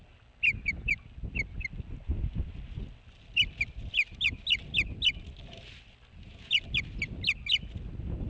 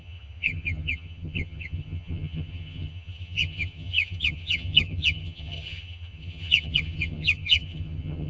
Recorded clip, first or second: first